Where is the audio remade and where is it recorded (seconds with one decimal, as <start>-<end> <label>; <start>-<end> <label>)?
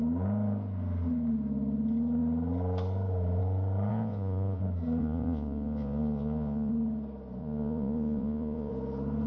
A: 0.0-3.9 recorded; 3.9-4.6 remade; 4.6-5.0 recorded; 5.0-6.7 remade; 6.7-7.4 recorded; 7.4-8.7 remade; 8.7-9.3 recorded